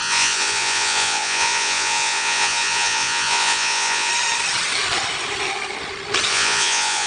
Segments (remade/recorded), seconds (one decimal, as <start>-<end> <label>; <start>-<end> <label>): 0.0-4.1 remade; 4.1-6.3 recorded; 6.3-7.1 remade